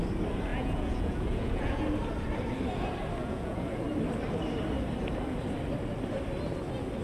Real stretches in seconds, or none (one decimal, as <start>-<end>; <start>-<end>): 0.0-0.5; 1.8-3.2; 3.8-7.0